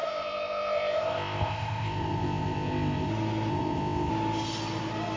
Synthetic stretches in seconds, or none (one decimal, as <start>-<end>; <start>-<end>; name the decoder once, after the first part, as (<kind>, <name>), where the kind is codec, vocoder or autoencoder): 0.0-3.1 (codec, ZipCodec); 3.5-4.1

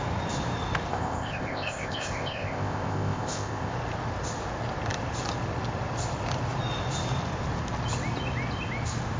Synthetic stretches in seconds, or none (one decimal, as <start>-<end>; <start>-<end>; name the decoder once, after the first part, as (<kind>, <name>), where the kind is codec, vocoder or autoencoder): 0.9-3.7 (codec, ZipCodec)